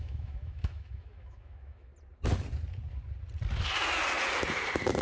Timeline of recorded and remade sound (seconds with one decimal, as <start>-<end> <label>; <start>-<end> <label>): 0.0-1.9 remade; 1.9-5.0 recorded